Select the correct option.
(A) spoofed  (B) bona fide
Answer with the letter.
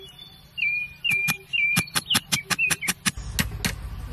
B